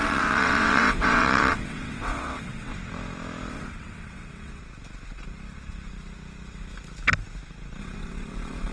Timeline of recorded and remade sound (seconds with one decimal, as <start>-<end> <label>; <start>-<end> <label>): 0.0-2.7 remade; 2.7-3.5 recorded; 3.5-4.6 remade; 4.6-7.8 recorded; 7.8-8.7 remade